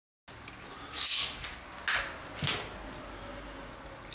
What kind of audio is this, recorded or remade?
recorded